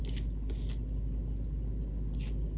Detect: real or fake real